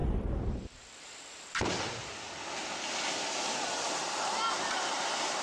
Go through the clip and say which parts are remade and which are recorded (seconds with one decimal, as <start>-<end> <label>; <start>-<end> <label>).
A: 0.0-5.4 recorded